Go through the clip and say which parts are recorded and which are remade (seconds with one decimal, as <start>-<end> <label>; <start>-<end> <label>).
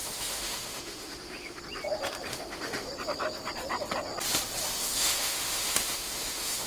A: 0.0-1.6 remade; 1.6-2.3 recorded; 2.3-2.9 remade; 2.9-4.8 recorded; 4.8-6.7 remade